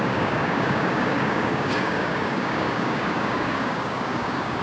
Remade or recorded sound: remade